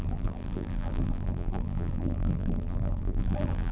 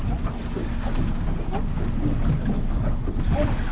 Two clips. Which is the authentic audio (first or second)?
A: second